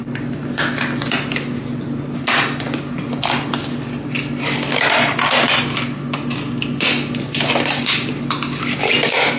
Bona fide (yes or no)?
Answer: yes